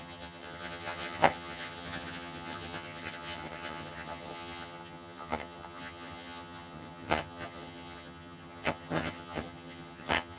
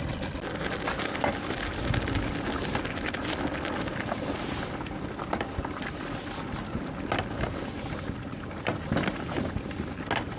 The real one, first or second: second